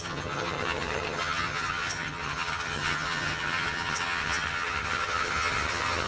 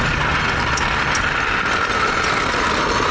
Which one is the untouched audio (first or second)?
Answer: second